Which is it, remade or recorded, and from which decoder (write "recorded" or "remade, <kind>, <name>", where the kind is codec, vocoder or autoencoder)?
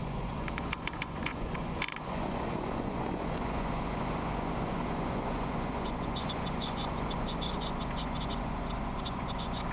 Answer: remade, vocoder, Vocos